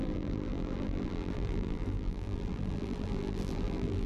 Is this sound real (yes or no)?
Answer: no